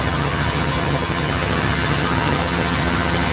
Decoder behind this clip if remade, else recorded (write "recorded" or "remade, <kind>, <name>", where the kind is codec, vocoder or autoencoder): remade, vocoder, HiFi-GAN